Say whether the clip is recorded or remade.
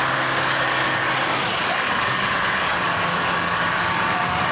remade